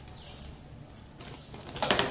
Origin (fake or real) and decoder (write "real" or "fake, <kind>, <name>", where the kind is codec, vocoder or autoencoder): real